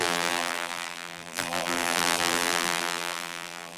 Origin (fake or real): fake